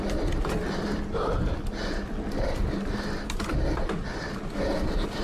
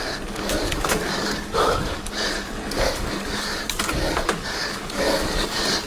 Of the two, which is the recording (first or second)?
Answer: first